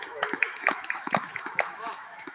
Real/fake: fake